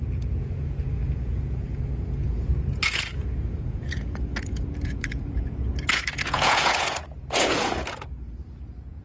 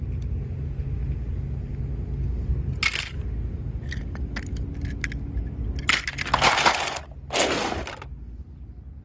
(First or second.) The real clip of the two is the second